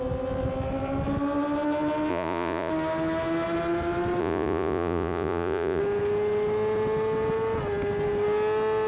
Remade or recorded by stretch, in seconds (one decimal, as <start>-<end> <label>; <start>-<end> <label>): 0.0-2.1 recorded; 2.1-2.7 remade; 2.7-4.2 recorded; 4.2-5.8 remade; 5.8-8.9 recorded